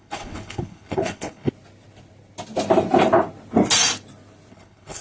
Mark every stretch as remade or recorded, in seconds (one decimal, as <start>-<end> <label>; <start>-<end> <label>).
0.0-1.5 remade; 1.5-4.5 recorded; 4.5-5.0 remade

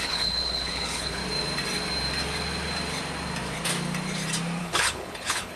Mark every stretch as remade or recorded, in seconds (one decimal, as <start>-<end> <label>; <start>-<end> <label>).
0.0-1.2 remade; 1.2-4.6 recorded; 4.6-5.6 remade

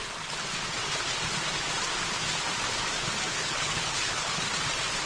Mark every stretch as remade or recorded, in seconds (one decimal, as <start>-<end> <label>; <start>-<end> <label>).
0.0-3.3 recorded; 3.3-4.5 remade; 4.5-5.1 recorded